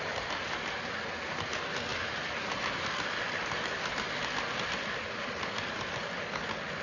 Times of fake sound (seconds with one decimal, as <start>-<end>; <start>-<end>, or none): 1.9-5.4